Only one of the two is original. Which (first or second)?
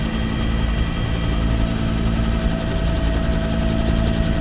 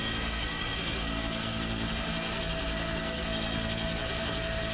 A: first